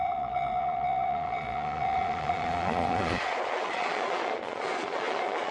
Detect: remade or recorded remade